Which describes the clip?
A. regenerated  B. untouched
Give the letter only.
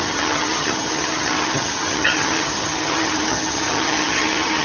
A